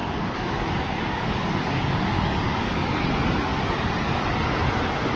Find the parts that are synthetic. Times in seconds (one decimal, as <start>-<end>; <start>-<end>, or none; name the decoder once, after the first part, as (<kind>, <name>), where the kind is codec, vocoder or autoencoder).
0.0-3.1 (codec, DAC)